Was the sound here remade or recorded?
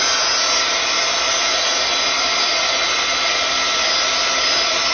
recorded